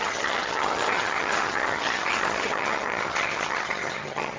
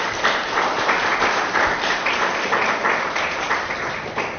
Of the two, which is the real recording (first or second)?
second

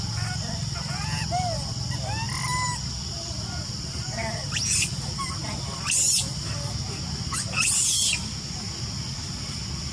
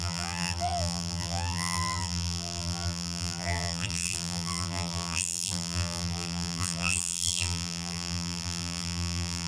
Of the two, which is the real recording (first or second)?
first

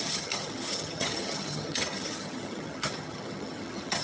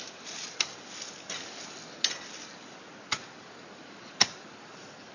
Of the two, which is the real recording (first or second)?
second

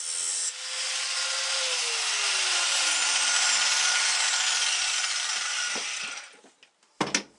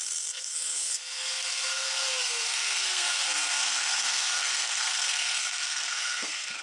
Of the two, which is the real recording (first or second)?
first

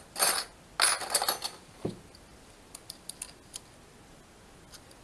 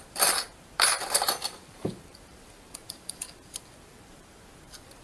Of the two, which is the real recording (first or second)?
first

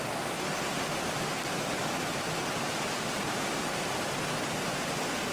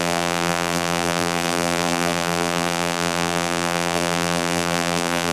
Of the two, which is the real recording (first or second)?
first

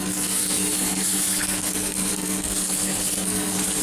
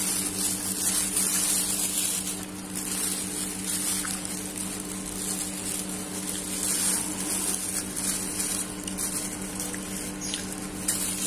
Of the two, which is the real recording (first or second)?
second